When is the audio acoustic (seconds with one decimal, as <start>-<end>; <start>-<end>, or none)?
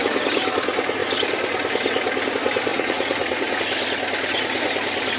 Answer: 0.0-2.7; 3.6-5.2